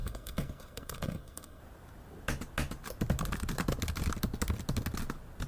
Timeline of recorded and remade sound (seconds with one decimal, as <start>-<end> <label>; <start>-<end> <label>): 0.0-1.6 remade; 1.6-5.5 recorded